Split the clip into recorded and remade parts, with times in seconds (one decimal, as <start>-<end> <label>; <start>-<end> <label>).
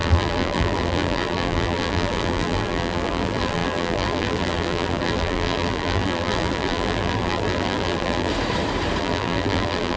0.0-8.3 remade; 8.3-9.0 recorded; 9.0-10.0 remade